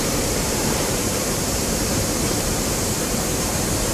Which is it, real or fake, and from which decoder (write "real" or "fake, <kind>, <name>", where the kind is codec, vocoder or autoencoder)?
fake, vocoder, BigVGAN v2